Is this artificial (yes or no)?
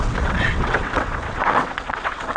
yes